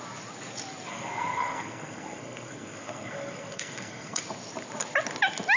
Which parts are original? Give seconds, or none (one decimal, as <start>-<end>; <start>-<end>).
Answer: 0.0-0.9; 4.2-5.6

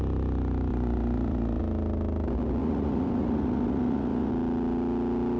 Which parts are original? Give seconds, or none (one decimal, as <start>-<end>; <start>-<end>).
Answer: 0.0-0.7; 1.6-2.6; 4.3-5.4